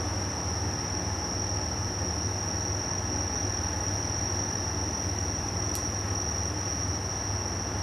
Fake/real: real